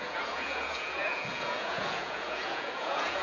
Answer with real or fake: fake